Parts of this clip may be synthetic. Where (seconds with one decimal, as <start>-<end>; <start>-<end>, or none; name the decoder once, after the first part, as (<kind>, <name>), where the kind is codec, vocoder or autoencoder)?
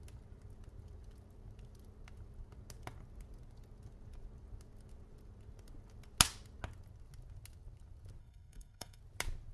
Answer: 8.2-9.0 (codec, SNAC)